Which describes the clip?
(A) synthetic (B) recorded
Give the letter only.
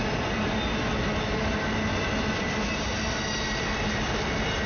B